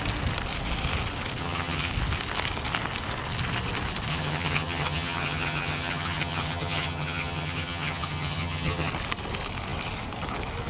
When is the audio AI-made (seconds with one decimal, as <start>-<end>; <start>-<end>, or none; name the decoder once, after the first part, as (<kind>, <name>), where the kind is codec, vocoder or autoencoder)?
1.4-1.9 (vocoder, HiFi-GAN); 4.1-8.9